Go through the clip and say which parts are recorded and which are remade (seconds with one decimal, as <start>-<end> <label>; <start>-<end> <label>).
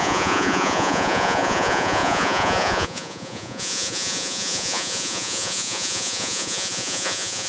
0.0-7.5 remade